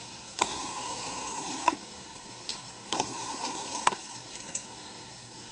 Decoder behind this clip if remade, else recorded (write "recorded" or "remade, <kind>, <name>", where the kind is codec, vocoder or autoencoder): remade, codec, SNAC